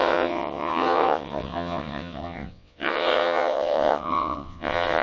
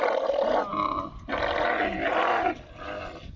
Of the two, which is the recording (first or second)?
second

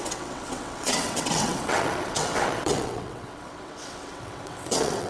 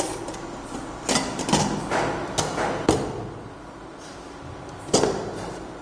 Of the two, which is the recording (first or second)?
second